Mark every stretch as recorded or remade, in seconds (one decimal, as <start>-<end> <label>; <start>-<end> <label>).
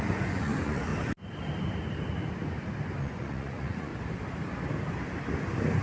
0.0-0.9 remade; 0.9-3.0 recorded; 3.0-3.9 remade; 3.9-5.8 recorded